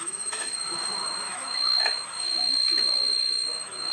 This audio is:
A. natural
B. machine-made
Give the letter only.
B